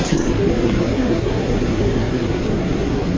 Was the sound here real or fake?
fake